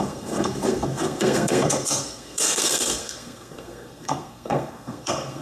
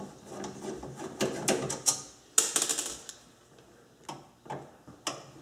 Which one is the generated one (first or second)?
first